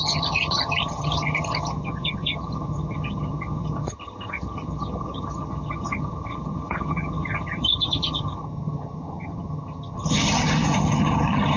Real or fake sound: fake